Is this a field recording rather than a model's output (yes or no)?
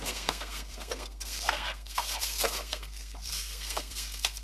no